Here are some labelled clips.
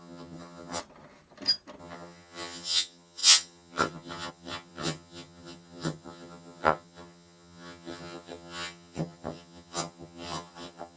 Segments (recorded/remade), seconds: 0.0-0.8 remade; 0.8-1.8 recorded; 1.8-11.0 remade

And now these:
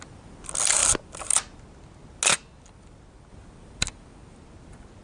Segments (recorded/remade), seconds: 0.0-5.0 recorded